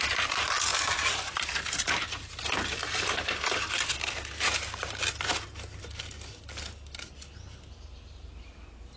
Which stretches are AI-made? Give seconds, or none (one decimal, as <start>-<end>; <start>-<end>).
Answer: none